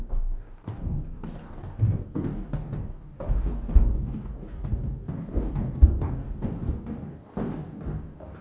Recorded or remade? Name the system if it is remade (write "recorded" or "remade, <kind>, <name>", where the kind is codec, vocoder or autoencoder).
remade, codec, DAC